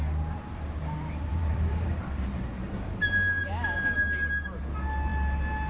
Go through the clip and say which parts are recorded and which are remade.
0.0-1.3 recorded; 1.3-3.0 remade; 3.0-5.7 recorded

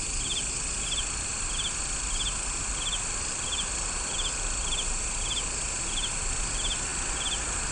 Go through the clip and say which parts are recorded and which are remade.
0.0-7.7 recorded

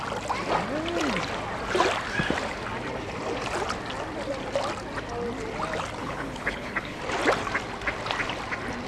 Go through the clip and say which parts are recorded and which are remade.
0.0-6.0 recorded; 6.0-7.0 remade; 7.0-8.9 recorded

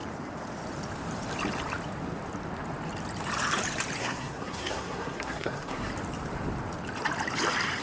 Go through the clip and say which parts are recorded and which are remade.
0.0-4.0 recorded; 4.0-5.9 remade; 5.9-7.8 recorded